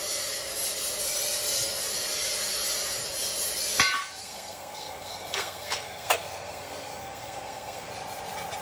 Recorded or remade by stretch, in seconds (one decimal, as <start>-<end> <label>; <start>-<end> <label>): 0.0-4.2 recorded; 4.2-7.9 remade; 7.9-8.6 recorded